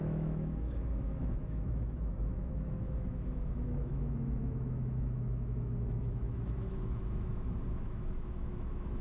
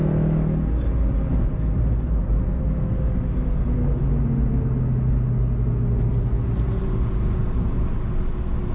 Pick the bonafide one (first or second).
second